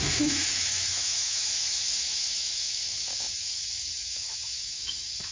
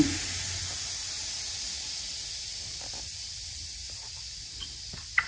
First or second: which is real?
second